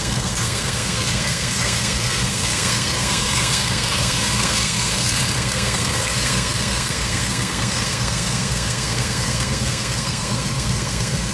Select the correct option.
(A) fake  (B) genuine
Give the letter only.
A